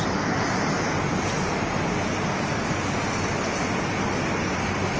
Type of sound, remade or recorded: recorded